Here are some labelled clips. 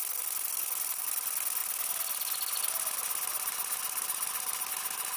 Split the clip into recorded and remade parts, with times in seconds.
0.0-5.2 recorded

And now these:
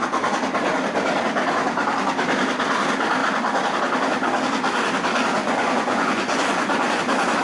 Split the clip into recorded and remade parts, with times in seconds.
0.0-5.4 recorded; 5.4-7.0 remade; 7.0-7.4 recorded

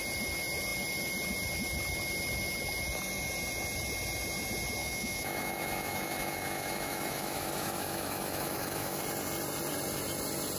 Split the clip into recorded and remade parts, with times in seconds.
0.0-4.8 recorded; 4.8-9.0 remade; 9.0-10.6 recorded

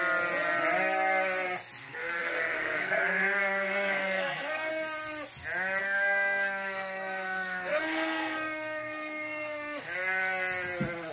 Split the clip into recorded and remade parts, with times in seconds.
0.0-1.8 recorded; 1.8-4.7 remade; 4.7-5.8 recorded; 5.8-9.8 remade; 9.8-11.1 recorded

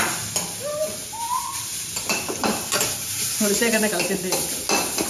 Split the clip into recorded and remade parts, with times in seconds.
0.0-0.7 recorded; 0.7-3.8 remade; 3.8-5.1 recorded

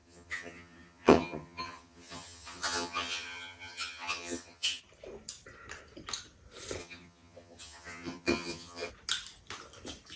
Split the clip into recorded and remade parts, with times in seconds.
0.0-4.8 remade; 4.8-6.8 recorded; 6.8-8.9 remade; 8.9-10.2 recorded

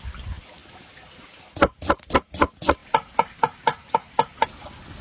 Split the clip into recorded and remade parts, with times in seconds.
0.0-5.0 recorded

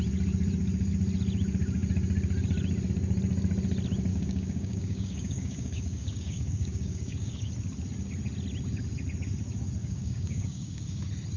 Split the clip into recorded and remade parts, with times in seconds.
0.0-4.1 recorded; 4.1-7.5 remade; 7.5-9.8 recorded; 9.8-11.0 remade; 11.0-11.4 recorded